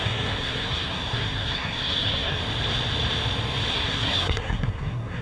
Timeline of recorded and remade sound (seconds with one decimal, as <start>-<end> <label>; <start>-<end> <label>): 0.0-2.4 remade; 2.4-3.7 recorded; 3.7-5.2 remade